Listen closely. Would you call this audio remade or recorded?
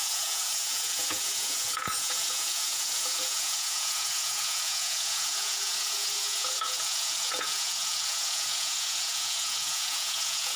remade